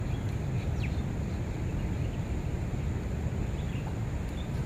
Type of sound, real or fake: real